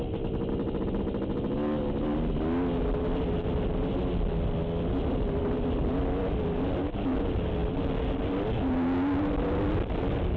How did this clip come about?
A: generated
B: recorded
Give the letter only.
B